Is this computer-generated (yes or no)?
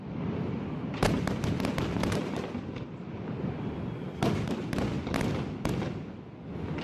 no